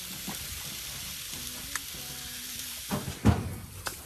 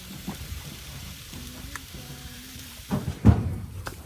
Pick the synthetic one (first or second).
second